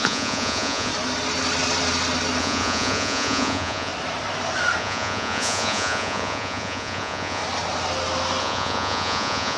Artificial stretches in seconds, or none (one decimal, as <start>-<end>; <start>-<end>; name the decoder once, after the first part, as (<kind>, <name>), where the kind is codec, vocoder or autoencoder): 0.0-0.9 (vocoder, Vocos); 2.4-3.9; 4.8-7.4; 8.4-9.6